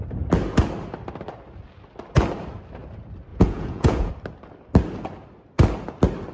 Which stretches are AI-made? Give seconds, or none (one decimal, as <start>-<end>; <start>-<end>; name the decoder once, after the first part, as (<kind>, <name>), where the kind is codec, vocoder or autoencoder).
3.3-4.1 (vocoder, Vocos)